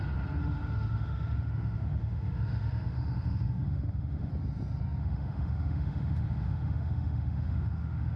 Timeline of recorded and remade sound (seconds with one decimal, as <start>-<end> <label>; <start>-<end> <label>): 0.0-0.4 recorded; 0.4-4.3 remade; 4.3-5.0 recorded; 5.0-8.2 remade